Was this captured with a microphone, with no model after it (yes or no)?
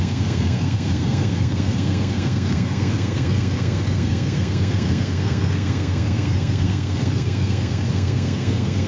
no